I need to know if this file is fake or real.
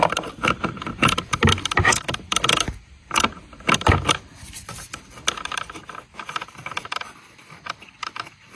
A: real